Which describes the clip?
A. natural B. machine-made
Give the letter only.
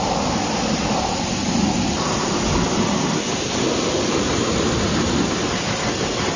A